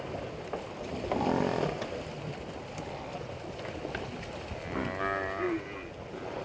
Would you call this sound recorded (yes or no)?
yes